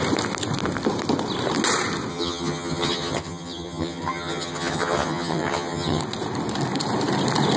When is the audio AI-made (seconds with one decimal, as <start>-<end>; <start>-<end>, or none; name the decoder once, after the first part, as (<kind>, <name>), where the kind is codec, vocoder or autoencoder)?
2.1-6.0 (vocoder, HiFi-GAN)